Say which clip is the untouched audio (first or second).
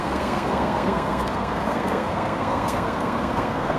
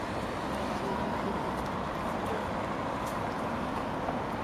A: second